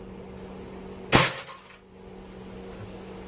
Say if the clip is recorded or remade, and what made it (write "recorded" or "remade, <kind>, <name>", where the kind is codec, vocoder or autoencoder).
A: recorded